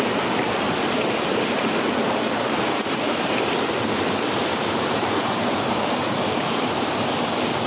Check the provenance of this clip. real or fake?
fake